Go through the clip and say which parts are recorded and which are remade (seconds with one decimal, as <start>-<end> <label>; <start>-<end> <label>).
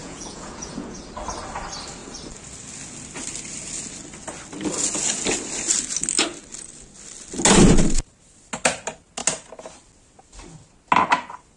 0.0-1.0 remade; 1.0-11.6 recorded